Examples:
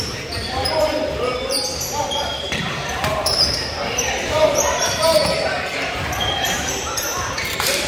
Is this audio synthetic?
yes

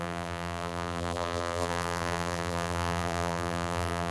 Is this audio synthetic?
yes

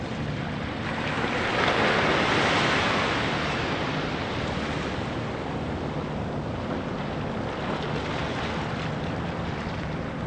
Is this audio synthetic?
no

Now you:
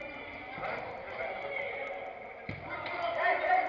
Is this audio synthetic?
no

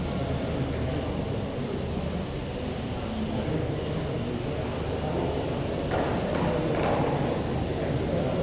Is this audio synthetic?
no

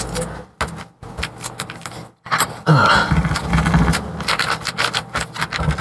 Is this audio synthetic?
no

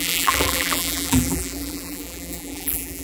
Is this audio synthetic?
yes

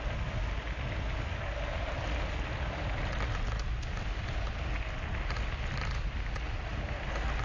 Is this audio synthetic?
no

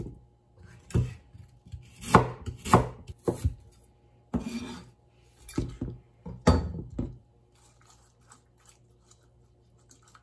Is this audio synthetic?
no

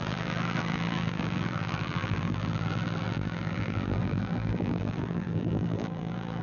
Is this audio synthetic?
yes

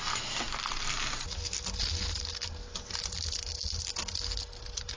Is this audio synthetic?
no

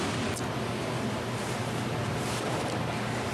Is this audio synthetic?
no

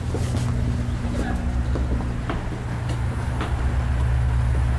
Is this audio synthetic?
no